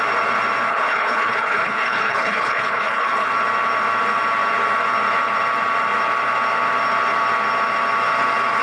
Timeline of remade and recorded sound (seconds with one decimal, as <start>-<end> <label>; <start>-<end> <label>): 0.0-0.7 recorded; 0.7-3.3 remade; 3.3-8.6 recorded